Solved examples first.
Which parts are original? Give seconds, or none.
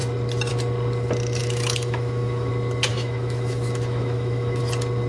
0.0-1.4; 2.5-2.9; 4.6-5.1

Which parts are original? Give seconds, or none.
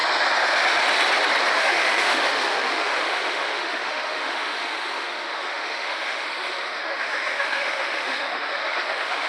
0.0-1.5